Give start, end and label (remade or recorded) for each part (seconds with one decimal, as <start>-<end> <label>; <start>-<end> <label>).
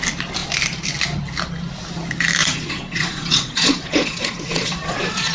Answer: 0.0-2.4 recorded; 2.4-5.3 remade